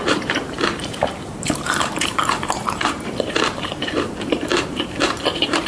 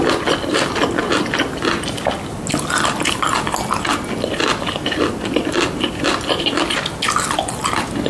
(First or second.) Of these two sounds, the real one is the second